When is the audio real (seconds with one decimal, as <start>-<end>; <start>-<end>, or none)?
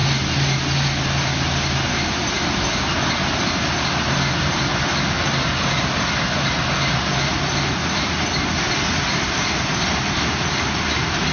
0.0-11.3